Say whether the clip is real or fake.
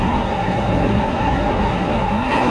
fake